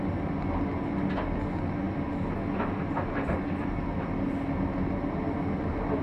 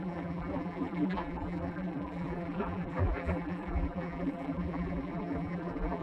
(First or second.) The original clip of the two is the first